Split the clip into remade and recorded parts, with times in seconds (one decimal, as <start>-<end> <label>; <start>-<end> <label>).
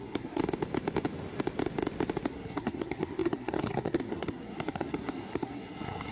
0.0-0.4 remade; 0.4-2.3 recorded; 2.3-6.1 remade